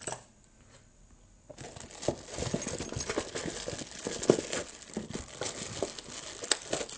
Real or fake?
real